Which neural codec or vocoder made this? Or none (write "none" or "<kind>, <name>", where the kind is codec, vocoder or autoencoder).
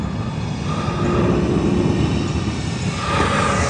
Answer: none